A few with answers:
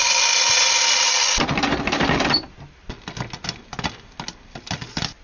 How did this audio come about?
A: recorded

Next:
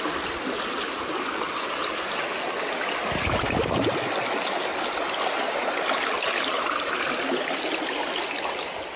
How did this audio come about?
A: recorded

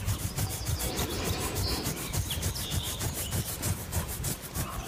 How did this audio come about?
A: remade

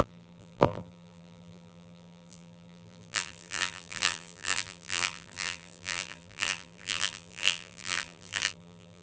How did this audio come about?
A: remade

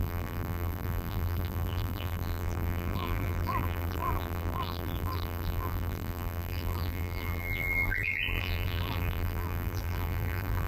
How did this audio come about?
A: remade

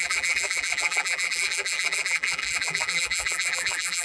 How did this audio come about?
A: remade